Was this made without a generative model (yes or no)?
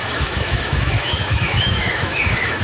no